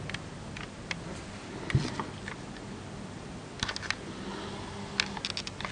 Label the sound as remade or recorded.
recorded